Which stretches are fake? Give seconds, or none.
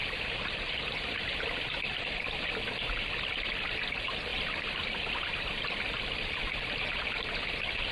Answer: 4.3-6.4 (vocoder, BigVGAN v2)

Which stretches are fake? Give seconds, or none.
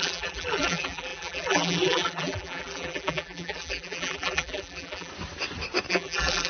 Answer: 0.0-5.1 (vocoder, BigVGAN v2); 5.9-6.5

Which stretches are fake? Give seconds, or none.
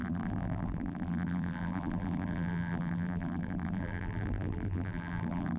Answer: 0.0-5.6 (vocoder, BigVGAN v2)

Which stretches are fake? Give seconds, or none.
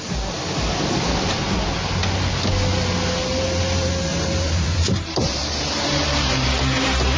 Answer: 4.1-6.5 (vocoder, BigVGAN v2)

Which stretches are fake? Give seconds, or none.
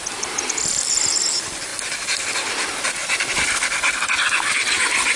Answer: 1.7-2.5 (vocoder, BigVGAN v2); 3.0-4.5